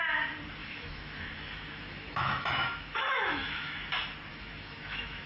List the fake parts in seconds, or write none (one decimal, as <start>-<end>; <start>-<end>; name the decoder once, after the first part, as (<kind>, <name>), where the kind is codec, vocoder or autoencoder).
0.6-3.8 (autoencoder, DAC-VAE); 4.3-5.3